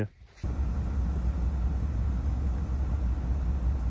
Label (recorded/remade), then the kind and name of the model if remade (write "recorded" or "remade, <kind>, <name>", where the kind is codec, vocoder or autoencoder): recorded